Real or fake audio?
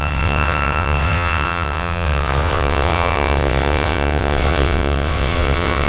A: fake